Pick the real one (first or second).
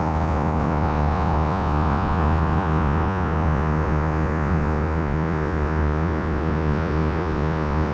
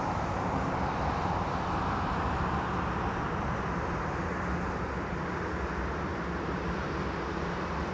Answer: second